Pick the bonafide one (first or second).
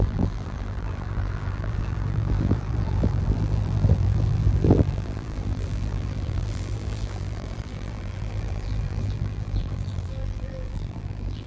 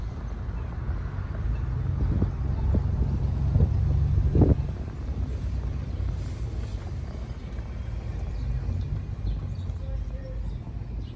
second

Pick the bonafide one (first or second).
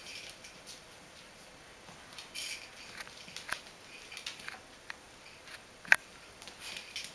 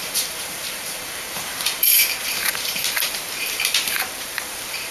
first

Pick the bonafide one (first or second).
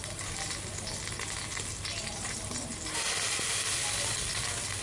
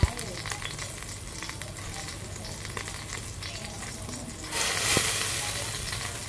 second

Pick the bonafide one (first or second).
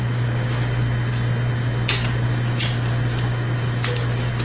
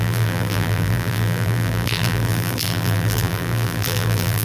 first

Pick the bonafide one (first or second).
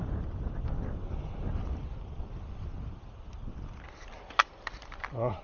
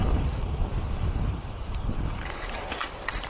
first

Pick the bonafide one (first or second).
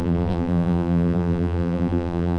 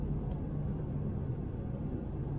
second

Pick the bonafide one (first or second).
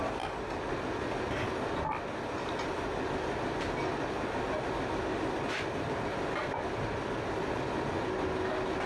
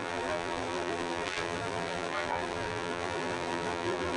first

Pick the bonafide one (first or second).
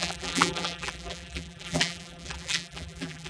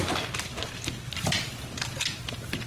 second